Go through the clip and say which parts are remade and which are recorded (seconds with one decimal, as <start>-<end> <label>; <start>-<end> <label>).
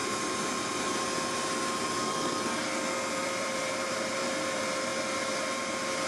0.0-3.1 recorded; 3.1-4.9 remade; 4.9-6.1 recorded